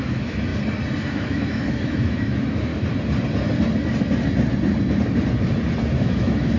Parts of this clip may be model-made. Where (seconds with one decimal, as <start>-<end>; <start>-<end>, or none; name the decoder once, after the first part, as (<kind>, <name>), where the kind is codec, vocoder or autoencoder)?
0.0-0.5 (autoencoder, DAC-VAE); 1.0-2.7; 6.0-6.6